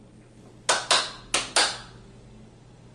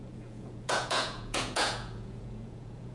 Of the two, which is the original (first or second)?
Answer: first